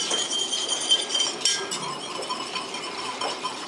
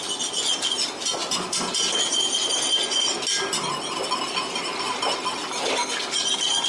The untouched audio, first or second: second